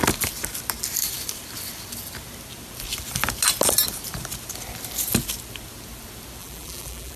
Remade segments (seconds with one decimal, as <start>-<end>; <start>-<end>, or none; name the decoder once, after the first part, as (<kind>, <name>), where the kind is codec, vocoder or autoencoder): 6.4-7.2 (vocoder, BigVGAN v2)